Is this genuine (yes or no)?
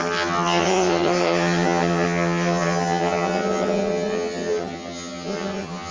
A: no